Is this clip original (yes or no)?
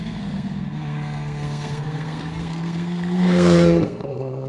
no